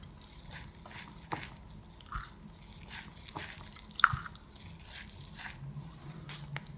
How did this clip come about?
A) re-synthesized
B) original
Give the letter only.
B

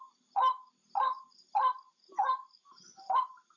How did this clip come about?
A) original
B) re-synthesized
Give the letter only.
B